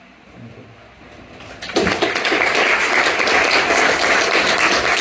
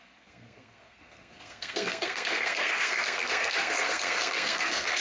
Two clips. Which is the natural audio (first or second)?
first